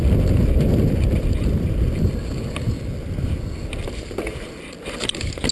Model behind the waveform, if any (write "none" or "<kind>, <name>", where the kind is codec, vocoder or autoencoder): none